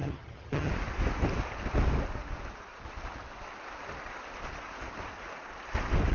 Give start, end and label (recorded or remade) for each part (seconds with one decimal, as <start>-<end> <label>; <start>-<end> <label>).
0.0-0.7 remade; 0.7-6.1 recorded